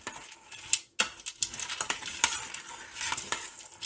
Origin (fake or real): real